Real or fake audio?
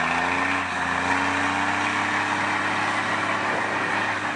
real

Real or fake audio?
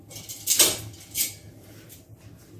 real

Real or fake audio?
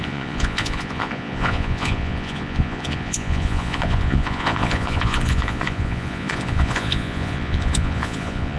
fake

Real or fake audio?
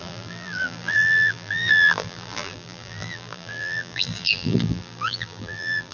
fake